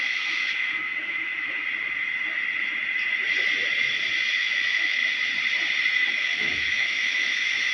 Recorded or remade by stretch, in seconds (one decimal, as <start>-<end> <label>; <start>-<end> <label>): 0.0-1.6 remade; 1.6-4.3 recorded; 4.3-5.0 remade; 5.0-6.1 recorded; 6.1-7.7 remade